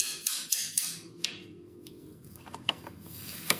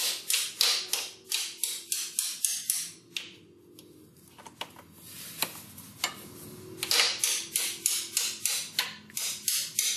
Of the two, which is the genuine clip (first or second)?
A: second